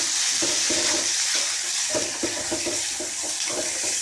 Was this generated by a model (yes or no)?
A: no